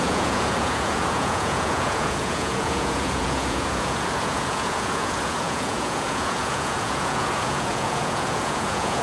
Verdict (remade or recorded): remade